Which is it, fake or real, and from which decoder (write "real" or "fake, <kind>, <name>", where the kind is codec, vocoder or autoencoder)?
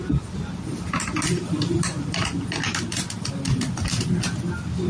real